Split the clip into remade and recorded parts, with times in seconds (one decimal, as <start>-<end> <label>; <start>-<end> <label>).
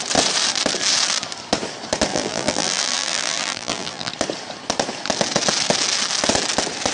0.0-2.1 recorded; 2.1-4.1 remade; 4.1-6.9 recorded